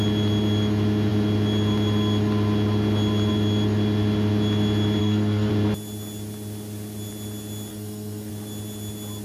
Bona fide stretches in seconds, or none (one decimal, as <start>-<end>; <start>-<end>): 0.0-5.0; 5.5-7.7; 8.3-9.2